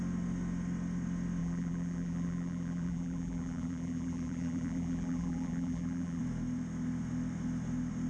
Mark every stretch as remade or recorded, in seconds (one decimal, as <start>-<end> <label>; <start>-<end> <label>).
0.0-1.4 recorded; 1.4-6.2 remade; 6.2-8.1 recorded